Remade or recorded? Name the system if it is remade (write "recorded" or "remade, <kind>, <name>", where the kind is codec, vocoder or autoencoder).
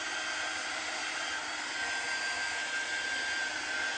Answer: recorded